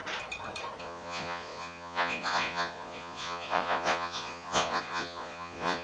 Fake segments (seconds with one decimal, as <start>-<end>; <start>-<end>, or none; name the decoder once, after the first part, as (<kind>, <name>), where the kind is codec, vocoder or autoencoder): 0.8-5.8 (vocoder, Vocos)